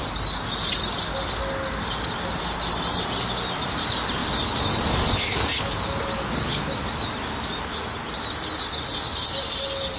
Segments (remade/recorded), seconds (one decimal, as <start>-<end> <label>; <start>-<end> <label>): 0.0-10.0 recorded